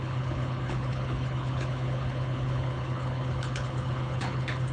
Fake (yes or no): yes